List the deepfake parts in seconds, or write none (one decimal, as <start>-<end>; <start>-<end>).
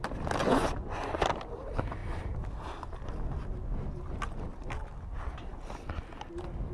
0.4-1.1